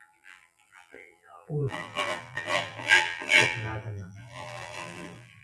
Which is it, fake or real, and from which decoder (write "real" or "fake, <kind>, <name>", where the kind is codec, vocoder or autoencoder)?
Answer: fake, vocoder, BigVGAN v2